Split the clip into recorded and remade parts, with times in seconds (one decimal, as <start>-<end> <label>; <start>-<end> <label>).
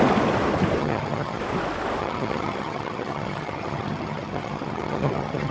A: 0.0-0.8 recorded; 0.8-1.4 remade; 1.4-2.0 recorded; 2.0-5.5 remade